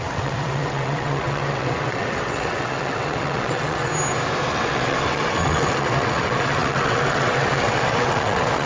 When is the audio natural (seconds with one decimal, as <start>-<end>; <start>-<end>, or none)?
3.9-4.5